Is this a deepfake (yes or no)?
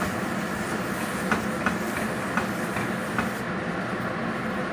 no